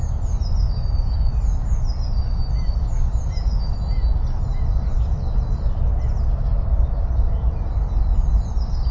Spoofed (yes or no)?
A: no